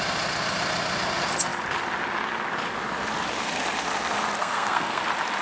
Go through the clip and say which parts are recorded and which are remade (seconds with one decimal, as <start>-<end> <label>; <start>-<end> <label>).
0.0-4.4 recorded; 4.4-5.0 remade; 5.0-5.4 recorded